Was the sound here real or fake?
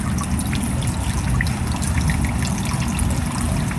real